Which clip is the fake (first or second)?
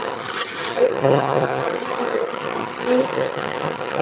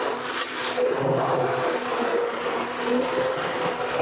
first